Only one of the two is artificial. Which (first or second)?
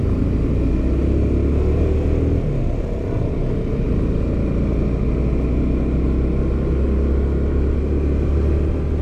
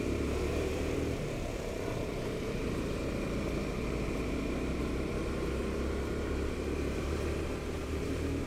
second